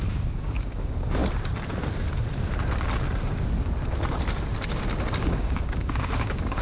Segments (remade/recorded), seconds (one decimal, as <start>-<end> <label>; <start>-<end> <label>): 0.0-1.2 remade; 1.2-5.2 recorded; 5.2-6.6 remade